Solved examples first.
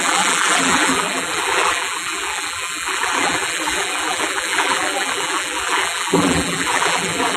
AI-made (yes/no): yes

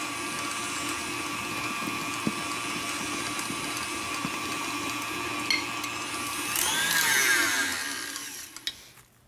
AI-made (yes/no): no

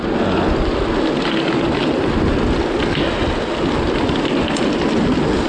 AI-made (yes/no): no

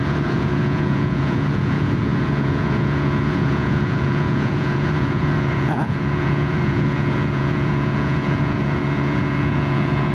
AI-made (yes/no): yes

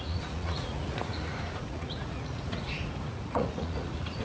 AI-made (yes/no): yes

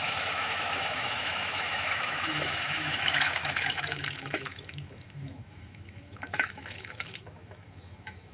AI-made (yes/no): yes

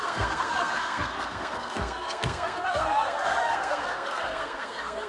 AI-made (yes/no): yes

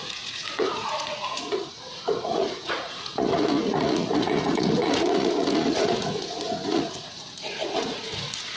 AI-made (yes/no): yes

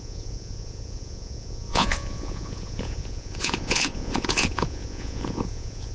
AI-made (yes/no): yes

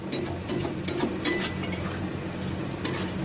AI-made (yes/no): no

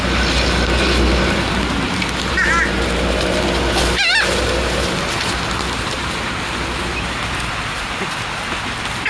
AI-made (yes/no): no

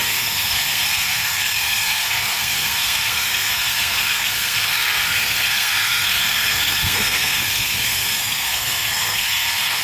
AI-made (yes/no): yes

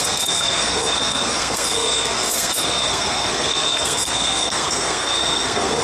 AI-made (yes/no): yes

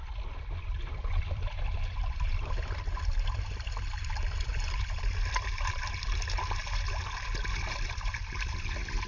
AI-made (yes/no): yes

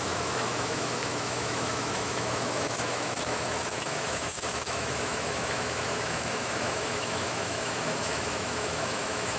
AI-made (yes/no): yes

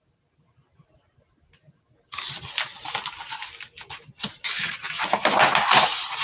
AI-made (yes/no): no